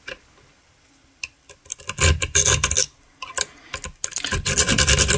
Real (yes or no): yes